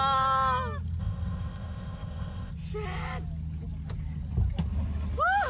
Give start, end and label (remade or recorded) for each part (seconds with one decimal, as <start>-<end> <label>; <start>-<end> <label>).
0.0-1.0 recorded; 1.0-2.5 remade; 2.5-5.5 recorded